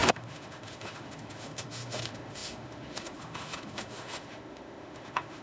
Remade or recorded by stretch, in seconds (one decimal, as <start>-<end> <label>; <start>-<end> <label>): 0.0-5.4 remade